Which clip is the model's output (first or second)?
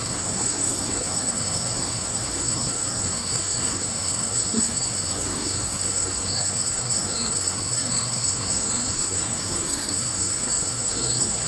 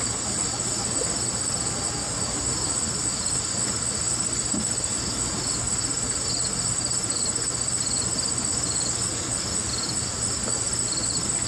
first